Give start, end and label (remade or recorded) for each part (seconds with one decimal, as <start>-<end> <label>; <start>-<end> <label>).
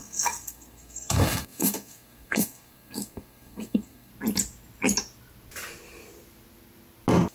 0.0-4.1 remade; 4.1-7.3 recorded